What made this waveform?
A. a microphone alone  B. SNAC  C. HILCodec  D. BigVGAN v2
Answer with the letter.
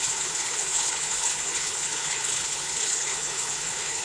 C